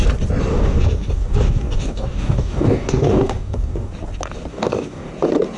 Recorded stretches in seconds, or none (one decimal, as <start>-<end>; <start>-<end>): 0.0-0.5; 3.9-4.5; 5.1-5.6